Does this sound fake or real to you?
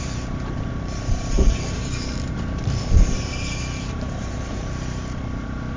fake